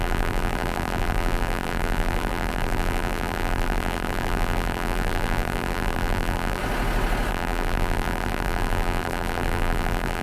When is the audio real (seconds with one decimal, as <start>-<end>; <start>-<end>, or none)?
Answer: 6.6-7.3